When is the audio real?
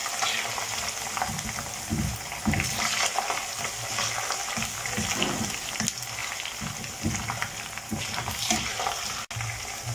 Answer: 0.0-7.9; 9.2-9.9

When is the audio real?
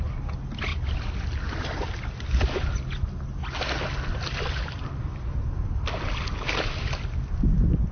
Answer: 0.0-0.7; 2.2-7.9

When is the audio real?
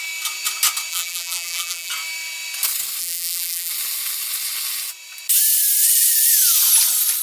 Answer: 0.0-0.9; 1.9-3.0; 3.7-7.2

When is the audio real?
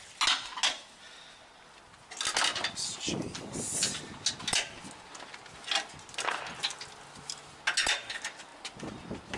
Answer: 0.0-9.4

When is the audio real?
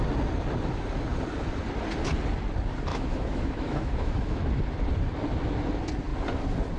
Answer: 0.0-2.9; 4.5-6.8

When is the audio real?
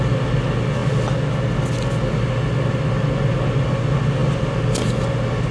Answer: 0.0-5.5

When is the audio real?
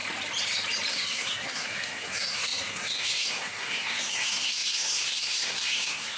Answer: 0.0-0.9